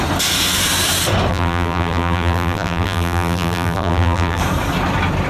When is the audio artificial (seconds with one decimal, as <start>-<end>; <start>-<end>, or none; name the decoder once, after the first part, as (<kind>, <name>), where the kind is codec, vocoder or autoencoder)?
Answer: 1.3-4.4 (vocoder, BigVGAN v2)